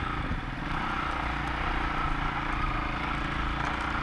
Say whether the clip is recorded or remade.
recorded